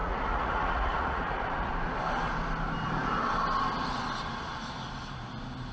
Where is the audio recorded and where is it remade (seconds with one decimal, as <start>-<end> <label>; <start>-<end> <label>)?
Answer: 0.0-1.7 remade; 1.7-5.7 recorded